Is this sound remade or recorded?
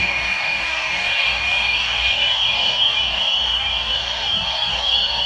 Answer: remade